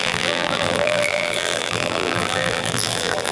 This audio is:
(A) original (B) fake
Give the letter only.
B